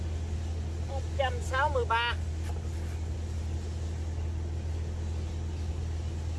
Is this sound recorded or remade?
recorded